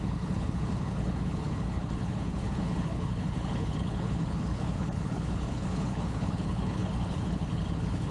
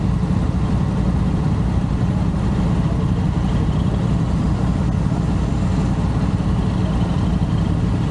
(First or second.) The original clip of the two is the second